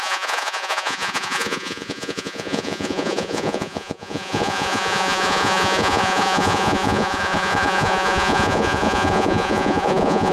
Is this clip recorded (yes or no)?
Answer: no